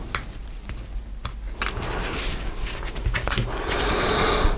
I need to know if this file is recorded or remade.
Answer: recorded